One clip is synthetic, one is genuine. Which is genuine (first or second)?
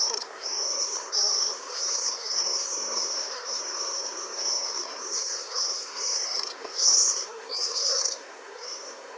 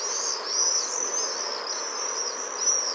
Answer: second